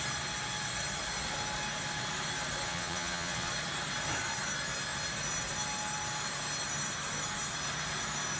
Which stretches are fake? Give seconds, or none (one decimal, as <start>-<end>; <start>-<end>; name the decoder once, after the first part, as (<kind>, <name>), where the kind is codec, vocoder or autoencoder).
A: 2.7-3.5 (vocoder, Vocos)